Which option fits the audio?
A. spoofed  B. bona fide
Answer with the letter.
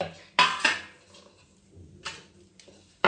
B